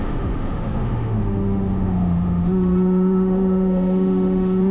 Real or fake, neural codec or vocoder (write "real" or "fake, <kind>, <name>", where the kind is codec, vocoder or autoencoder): fake, autoencoder, DAC-VAE